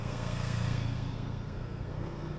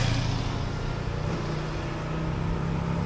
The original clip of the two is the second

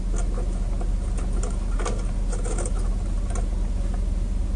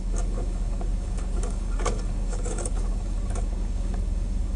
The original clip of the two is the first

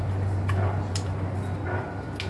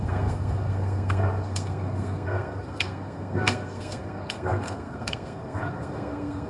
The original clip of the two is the first